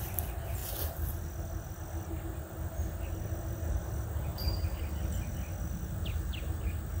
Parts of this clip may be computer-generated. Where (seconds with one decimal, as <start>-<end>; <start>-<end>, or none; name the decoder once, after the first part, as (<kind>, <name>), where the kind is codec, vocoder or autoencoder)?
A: none